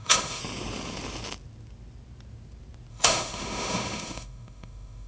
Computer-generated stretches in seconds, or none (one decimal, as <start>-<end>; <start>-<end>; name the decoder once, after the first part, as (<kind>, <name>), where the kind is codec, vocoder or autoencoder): 0.0-0.4 (autoencoder, DAC-VAE); 2.9-5.1

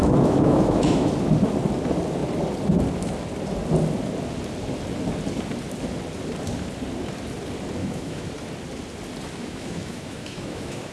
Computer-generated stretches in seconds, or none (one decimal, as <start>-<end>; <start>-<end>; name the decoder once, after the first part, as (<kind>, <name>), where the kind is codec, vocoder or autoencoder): 0.0-1.1 (autoencoder, DAC-VAE); 7.8-8.3; 9.4-10.9

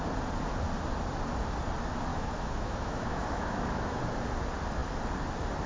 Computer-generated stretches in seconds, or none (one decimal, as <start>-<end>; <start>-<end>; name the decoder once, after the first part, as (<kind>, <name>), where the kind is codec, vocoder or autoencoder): 2.1-4.0 (autoencoder, DAC-VAE)

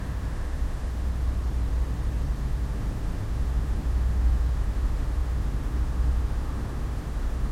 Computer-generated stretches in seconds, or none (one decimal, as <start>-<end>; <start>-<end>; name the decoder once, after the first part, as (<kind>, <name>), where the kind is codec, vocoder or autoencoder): 0.0-1.1 (autoencoder, DAC-VAE); 2.4-7.5

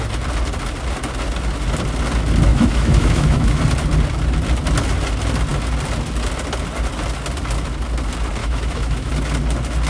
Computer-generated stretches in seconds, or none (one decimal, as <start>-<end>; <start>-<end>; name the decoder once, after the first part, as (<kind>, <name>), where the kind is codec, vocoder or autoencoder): 2.5-3.6 (autoencoder, DAC-VAE); 8.4-9.1